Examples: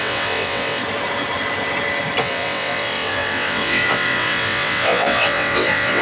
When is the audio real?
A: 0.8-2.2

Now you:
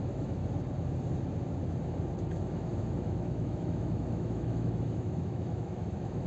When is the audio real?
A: 0.4-2.3

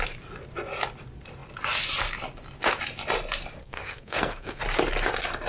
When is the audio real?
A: 0.0-3.6; 4.6-5.5

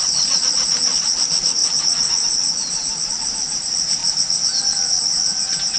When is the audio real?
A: 0.0-5.8